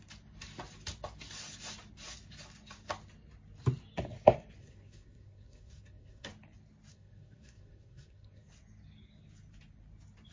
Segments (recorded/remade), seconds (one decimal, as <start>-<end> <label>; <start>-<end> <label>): 0.0-4.6 recorded; 4.6-6.3 remade; 6.3-6.9 recorded; 6.9-8.5 remade; 8.5-10.3 recorded